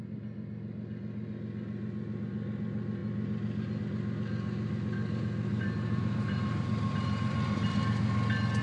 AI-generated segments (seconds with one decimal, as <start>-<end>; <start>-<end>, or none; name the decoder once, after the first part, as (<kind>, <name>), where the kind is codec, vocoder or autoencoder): 5.5-7.8 (vocoder, BigVGAN v2)